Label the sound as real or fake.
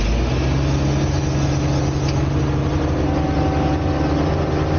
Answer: real